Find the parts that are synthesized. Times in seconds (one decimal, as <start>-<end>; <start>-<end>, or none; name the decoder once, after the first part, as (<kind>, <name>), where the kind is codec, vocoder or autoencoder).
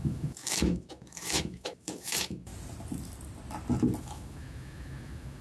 0.0-2.5 (autoencoder, DAC-VAE); 4.0-5.4